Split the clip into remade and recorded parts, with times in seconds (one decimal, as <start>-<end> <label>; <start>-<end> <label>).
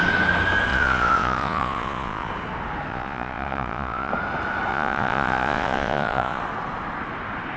0.0-0.7 recorded; 0.7-2.3 remade; 2.3-2.9 recorded; 2.9-4.1 remade; 4.1-4.7 recorded; 4.7-6.4 remade; 6.4-7.6 recorded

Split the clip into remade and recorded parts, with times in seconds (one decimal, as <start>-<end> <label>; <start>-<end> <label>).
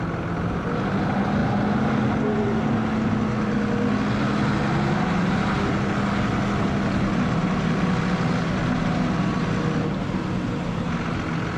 0.0-11.6 recorded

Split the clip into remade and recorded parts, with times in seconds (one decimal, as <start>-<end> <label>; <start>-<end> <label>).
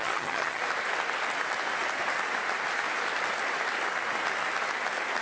0.0-0.6 remade; 0.6-5.2 recorded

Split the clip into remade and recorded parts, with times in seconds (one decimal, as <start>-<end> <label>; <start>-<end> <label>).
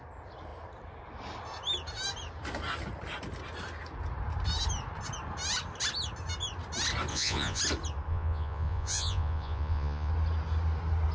0.0-7.1 recorded; 7.1-7.6 remade; 7.6-8.1 recorded; 8.1-10.1 remade; 10.1-11.1 recorded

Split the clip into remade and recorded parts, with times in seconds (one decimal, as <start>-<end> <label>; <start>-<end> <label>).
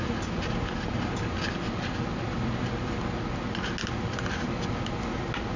0.0-5.6 recorded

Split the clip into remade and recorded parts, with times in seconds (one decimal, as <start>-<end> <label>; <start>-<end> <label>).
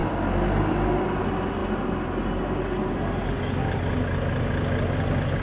0.0-5.4 recorded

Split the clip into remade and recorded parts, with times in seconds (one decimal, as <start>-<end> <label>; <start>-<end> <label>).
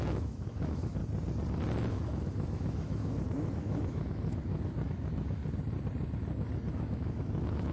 0.0-1.0 remade; 1.0-1.9 recorded; 1.9-5.4 remade; 5.4-6.7 recorded; 6.7-7.7 remade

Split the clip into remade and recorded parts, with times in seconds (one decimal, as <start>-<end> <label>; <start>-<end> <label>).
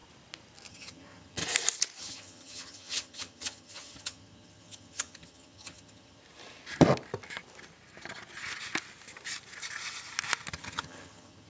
0.0-0.7 recorded; 0.7-1.4 remade; 1.4-2.0 recorded; 2.0-6.2 remade; 6.2-10.5 recorded; 10.5-11.5 remade